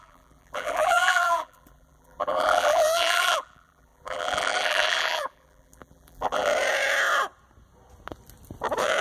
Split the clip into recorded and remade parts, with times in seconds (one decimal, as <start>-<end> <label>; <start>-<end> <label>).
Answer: 0.0-6.5 remade; 6.5-9.0 recorded